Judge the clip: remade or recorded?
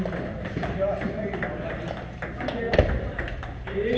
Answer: recorded